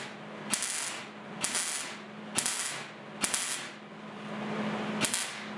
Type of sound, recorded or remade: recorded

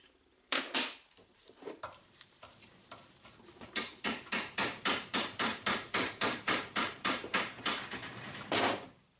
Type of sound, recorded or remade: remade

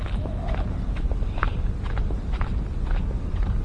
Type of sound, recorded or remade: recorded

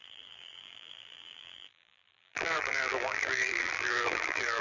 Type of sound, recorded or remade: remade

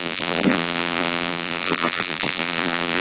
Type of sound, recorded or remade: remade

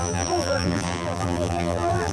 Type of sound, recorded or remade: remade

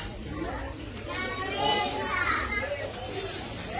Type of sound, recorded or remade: remade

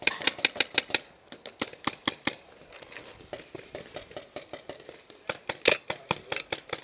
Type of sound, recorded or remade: recorded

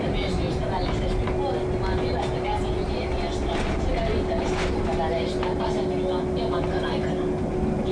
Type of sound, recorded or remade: recorded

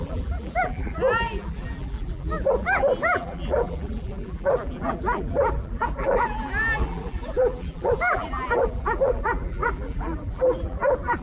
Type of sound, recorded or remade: remade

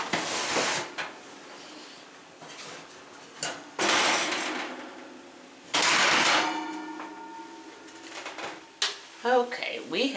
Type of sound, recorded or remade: recorded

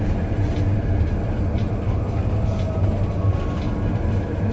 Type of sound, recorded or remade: recorded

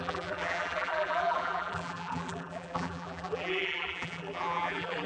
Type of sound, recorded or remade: remade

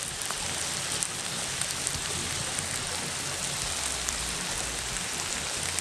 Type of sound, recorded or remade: remade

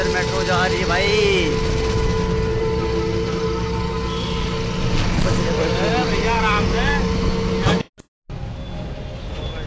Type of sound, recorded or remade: recorded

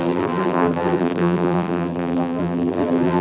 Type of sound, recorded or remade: remade